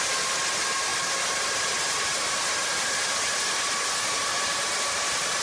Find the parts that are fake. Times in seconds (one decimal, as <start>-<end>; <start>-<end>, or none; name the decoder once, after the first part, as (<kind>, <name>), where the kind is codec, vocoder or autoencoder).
none